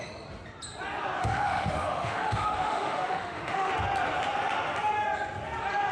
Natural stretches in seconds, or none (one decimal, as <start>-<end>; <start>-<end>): 0.0-1.2; 3.7-5.9